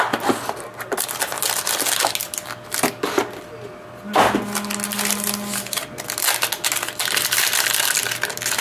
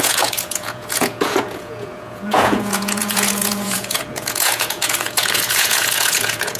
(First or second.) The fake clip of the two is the second